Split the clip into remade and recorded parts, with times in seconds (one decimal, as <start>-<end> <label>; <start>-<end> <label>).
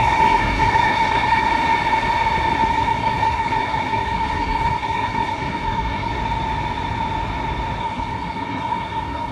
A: 0.0-1.5 remade; 1.5-2.7 recorded; 2.7-6.1 remade; 6.1-7.8 recorded; 7.8-9.3 remade